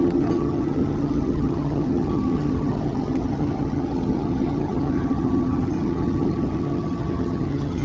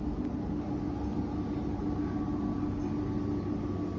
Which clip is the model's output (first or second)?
first